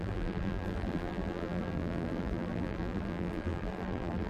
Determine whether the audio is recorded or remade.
remade